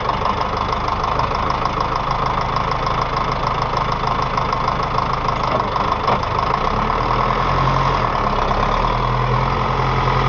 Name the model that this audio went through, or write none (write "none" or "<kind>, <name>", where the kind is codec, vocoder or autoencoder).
none